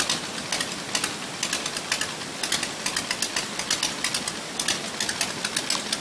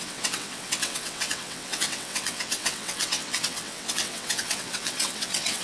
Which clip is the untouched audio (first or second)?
first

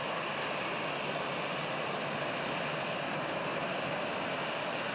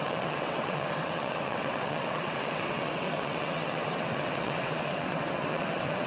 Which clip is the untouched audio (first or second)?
first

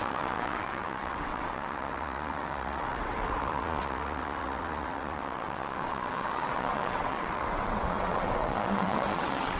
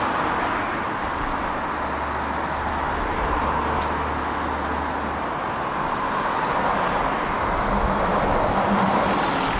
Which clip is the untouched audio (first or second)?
second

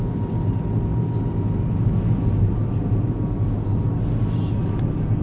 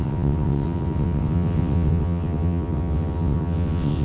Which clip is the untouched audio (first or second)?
first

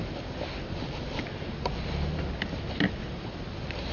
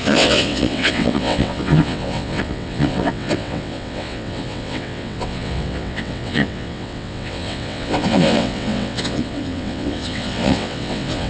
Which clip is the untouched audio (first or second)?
first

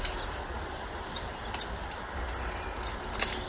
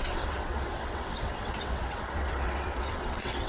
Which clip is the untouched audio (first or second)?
first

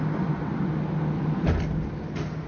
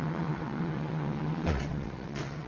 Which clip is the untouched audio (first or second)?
first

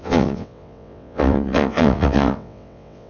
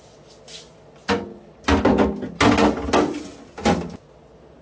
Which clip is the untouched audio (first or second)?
second